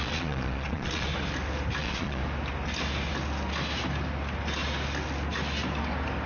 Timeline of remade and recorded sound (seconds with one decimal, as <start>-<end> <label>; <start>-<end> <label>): 0.0-1.1 remade; 1.1-1.8 recorded; 1.8-2.2 remade; 2.2-6.3 recorded